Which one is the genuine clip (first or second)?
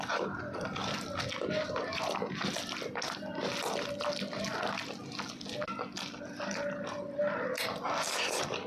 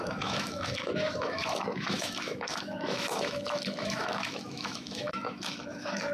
first